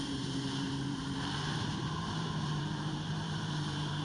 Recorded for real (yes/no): no